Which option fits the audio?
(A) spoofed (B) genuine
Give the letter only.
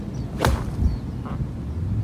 B